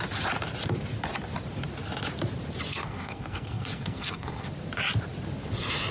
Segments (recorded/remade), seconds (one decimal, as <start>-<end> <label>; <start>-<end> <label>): 0.0-2.7 recorded; 2.7-4.5 remade; 4.5-5.9 recorded